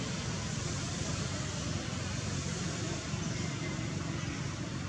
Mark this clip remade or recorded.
recorded